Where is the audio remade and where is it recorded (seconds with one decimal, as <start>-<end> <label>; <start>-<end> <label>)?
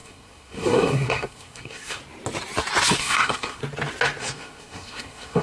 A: 0.0-2.0 remade; 2.0-3.0 recorded; 3.0-3.6 remade; 3.6-4.2 recorded; 4.2-5.4 remade